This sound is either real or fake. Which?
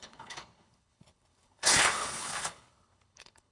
fake